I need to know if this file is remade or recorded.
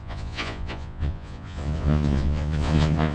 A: remade